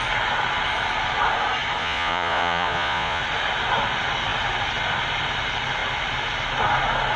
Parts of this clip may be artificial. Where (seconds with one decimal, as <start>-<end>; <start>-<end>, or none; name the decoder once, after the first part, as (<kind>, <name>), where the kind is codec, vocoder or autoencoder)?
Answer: 1.8-3.2 (vocoder, Vocos)